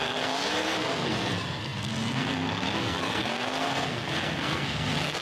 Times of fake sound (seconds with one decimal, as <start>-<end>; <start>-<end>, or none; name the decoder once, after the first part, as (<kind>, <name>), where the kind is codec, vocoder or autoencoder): 0.0-5.2 (codec, SNAC)